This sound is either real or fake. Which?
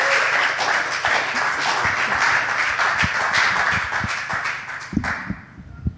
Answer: real